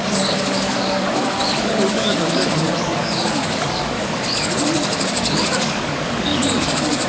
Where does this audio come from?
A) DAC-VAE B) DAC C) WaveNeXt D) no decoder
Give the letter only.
B